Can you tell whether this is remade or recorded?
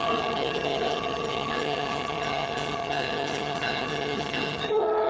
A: remade